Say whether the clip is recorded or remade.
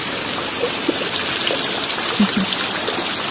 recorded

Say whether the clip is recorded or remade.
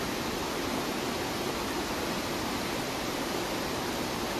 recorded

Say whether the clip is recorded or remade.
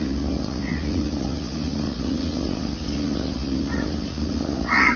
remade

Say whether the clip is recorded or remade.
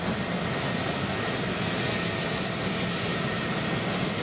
recorded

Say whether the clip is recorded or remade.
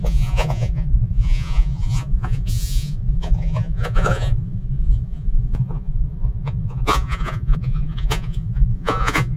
remade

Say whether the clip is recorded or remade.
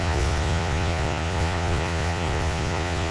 remade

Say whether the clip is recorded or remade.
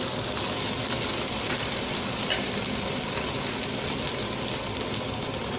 recorded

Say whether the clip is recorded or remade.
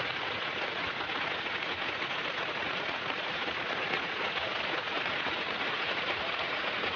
remade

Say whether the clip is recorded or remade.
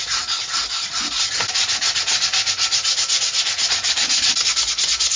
recorded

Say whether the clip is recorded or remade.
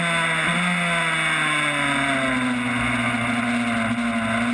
recorded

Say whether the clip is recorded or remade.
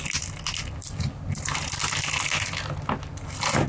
recorded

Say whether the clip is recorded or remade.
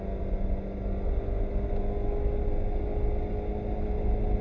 recorded